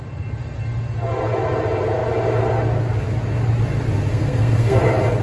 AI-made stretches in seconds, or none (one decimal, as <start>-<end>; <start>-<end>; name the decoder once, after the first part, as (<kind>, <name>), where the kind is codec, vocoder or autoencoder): 4.1-4.8 (codec, SNAC)